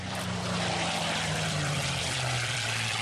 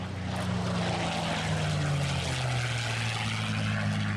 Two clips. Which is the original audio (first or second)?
second